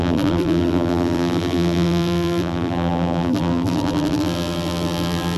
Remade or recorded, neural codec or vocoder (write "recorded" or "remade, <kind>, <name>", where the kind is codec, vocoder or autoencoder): remade, vocoder, BigVGAN v2